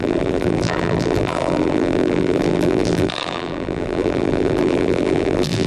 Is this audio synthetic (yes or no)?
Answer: yes